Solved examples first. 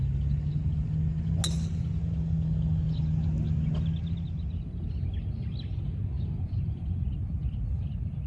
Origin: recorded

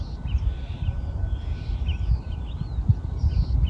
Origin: recorded